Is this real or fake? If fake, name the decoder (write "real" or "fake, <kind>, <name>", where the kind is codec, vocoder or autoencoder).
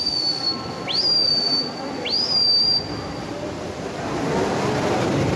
real